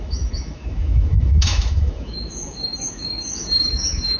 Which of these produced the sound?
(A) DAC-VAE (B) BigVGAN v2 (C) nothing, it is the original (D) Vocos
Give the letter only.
A